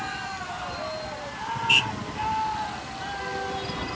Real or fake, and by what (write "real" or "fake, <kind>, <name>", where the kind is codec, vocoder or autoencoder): real